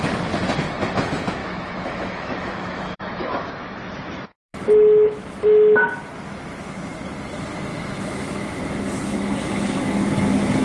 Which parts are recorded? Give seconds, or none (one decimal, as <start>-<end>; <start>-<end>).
0.0-1.4; 6.7-7.7; 8.6-10.6